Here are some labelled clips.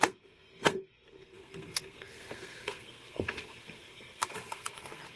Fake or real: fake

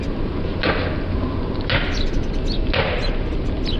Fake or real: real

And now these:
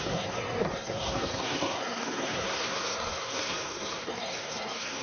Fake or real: fake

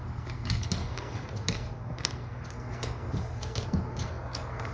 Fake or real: fake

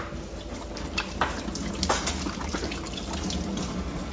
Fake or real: real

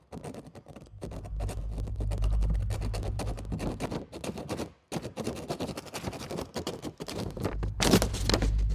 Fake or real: real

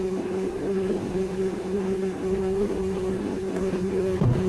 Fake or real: fake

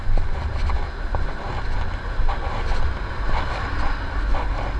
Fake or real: real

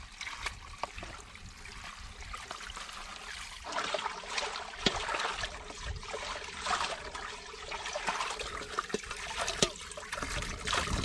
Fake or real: real